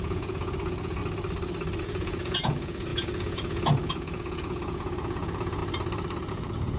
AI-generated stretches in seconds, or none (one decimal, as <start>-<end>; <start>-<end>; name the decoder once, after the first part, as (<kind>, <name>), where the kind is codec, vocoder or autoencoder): 0.0-1.0 (vocoder, Vocos); 1.8-5.6; 6.3-6.8